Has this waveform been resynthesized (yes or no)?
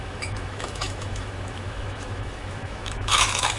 yes